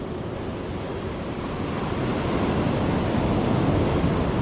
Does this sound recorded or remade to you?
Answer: recorded